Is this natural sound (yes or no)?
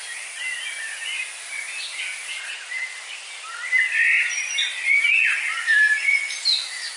yes